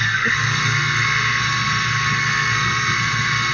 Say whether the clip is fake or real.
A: fake